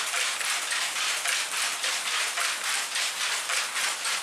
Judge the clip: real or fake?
real